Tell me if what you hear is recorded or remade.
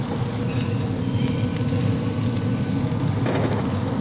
recorded